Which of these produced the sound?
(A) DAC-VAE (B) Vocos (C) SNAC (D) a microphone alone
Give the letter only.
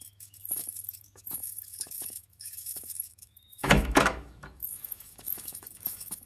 A